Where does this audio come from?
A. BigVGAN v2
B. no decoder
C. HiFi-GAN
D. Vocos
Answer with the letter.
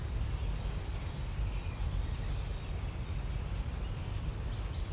B